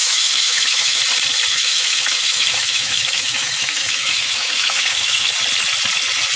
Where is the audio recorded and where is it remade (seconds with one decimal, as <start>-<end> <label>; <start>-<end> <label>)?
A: 0.0-1.0 remade; 1.0-1.5 recorded; 1.5-5.3 remade; 5.3-6.4 recorded